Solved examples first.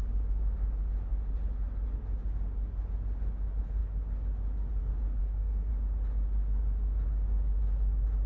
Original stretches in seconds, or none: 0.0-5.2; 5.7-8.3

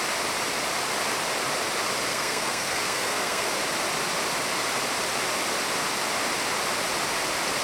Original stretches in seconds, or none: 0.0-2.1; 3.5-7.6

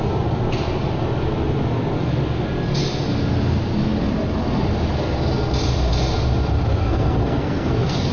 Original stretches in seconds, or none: 0.0-6.8